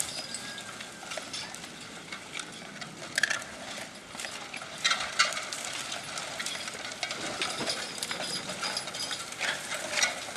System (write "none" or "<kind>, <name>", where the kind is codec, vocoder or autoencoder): none